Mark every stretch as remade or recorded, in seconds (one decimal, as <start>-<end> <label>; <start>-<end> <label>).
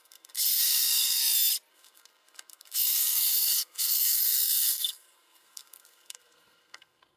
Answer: 0.0-1.2 remade; 1.2-1.7 recorded; 1.7-7.2 remade